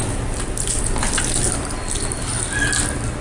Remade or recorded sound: recorded